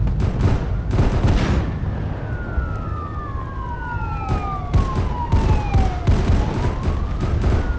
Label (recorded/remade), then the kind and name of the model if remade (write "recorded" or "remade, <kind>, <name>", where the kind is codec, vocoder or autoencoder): recorded